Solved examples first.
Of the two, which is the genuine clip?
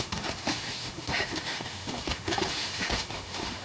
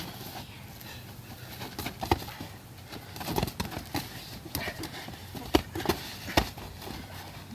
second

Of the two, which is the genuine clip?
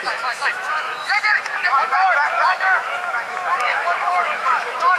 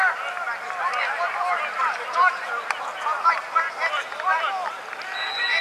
second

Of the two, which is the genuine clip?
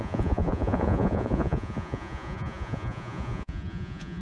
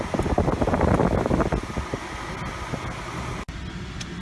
second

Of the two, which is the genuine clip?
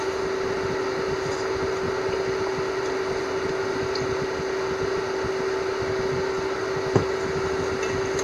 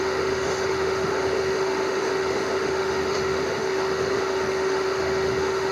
first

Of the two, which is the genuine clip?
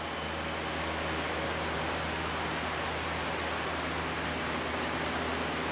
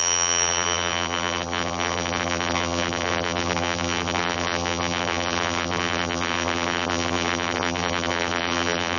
first